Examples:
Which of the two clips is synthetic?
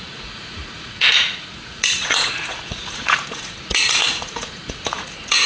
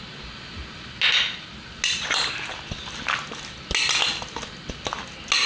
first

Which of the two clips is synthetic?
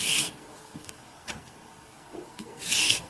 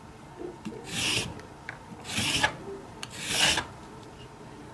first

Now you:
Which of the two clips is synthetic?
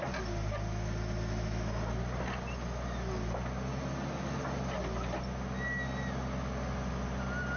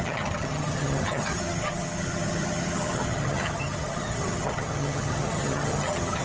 second